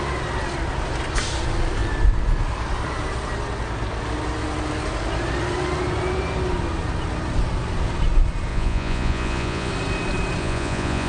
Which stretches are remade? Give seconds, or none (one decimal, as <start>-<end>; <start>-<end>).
8.5-9.7; 10.4-11.1